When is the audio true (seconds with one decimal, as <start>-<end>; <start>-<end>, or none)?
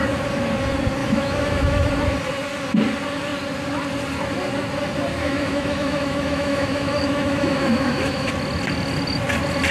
0.0-1.0; 1.9-5.2; 8.3-9.7